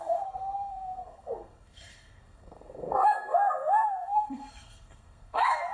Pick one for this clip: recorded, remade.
remade